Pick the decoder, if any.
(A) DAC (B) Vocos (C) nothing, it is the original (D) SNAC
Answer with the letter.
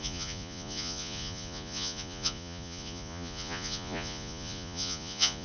B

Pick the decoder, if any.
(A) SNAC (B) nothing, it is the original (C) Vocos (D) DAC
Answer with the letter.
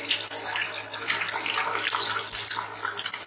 B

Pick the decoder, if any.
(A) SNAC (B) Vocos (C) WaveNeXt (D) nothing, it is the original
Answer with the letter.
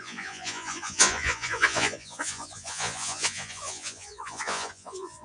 B